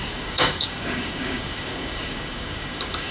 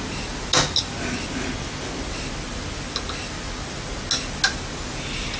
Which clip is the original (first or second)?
second